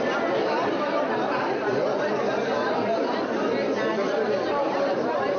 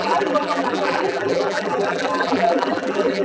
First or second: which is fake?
second